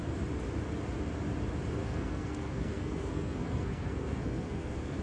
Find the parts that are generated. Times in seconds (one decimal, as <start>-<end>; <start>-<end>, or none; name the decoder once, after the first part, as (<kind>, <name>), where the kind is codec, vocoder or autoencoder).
1.8-5.0 (codec, SNAC)